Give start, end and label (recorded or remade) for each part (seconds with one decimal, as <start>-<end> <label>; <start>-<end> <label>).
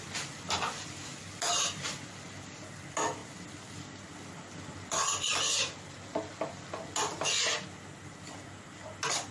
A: 0.0-9.3 recorded